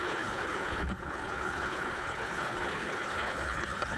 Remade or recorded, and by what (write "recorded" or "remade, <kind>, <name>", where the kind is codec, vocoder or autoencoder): remade, codec, HILCodec